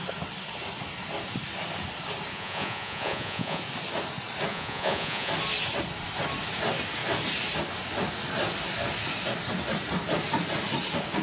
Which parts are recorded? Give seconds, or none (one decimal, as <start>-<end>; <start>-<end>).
0.0-2.3; 3.6-4.5; 5.3-11.2